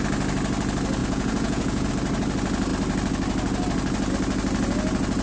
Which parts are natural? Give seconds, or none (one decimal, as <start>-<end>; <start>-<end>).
0.0-1.0; 1.9-5.2